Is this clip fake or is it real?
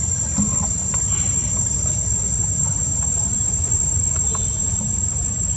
real